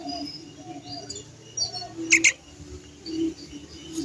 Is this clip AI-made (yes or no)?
no